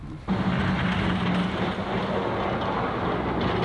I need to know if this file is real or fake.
real